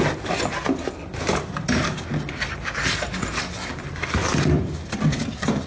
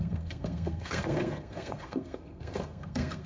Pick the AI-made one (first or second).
second